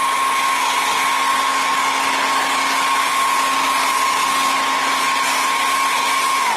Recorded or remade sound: recorded